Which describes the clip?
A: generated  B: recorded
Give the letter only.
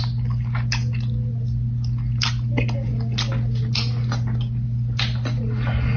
B